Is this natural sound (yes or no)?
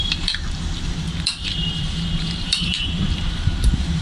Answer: no